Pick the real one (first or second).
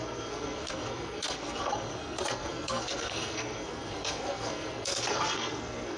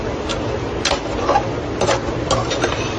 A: second